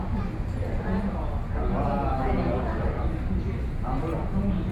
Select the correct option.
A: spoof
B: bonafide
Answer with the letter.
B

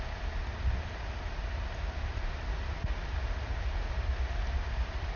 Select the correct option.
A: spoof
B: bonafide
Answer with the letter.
B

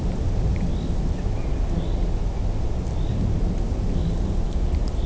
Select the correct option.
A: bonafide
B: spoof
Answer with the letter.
A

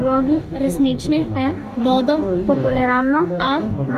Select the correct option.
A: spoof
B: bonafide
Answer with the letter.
A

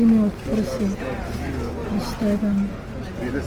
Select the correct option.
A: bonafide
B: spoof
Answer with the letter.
A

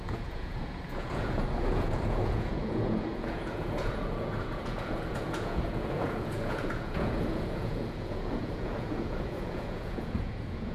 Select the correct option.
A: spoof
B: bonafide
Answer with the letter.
A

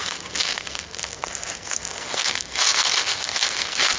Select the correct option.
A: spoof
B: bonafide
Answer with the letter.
A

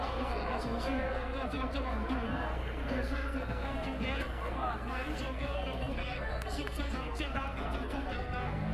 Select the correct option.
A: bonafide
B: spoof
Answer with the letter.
B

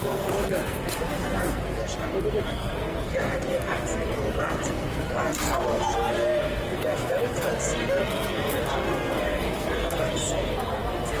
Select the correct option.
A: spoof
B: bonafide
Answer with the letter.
A